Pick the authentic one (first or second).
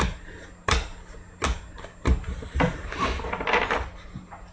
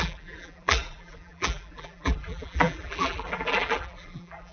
first